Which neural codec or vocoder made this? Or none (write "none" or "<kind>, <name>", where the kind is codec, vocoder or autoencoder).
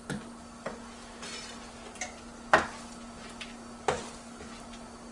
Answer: none